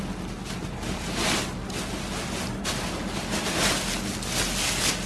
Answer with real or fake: real